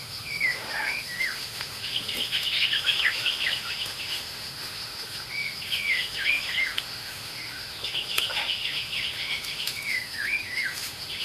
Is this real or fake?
fake